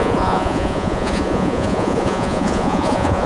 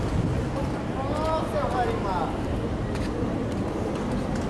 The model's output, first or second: first